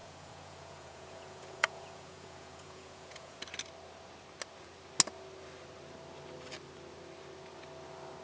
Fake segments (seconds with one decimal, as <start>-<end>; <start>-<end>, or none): 0.0-3.4